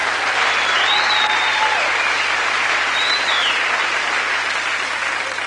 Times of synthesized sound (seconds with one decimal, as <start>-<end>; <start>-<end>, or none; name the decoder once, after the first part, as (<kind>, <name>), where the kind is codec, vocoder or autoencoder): none